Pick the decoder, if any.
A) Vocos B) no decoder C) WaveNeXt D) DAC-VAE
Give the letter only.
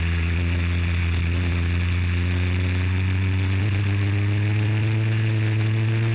B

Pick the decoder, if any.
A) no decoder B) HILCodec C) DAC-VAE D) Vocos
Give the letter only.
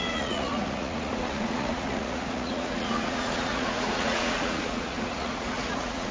D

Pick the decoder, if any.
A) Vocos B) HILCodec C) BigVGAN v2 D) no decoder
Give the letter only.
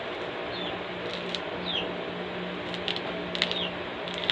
D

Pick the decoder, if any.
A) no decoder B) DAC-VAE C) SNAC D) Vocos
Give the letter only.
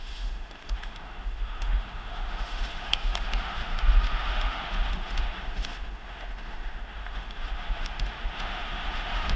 B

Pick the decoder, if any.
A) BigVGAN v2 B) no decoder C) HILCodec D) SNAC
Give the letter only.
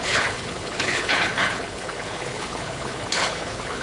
C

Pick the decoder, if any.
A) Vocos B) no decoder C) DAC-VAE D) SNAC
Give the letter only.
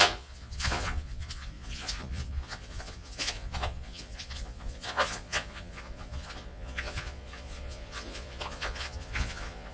A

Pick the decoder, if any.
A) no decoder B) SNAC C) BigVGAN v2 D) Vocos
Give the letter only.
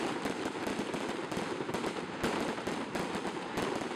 C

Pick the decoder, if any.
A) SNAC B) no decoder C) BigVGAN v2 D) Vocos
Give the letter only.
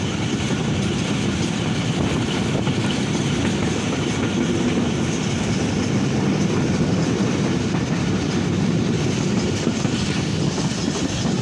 C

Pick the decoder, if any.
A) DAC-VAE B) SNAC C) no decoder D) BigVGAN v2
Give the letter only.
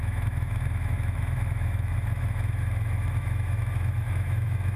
A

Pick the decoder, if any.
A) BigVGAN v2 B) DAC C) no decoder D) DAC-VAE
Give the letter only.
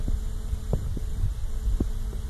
C